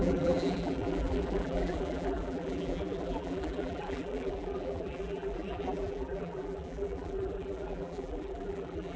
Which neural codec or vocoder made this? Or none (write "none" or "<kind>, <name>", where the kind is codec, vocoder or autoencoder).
vocoder, BigVGAN v2